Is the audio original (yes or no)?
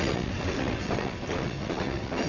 no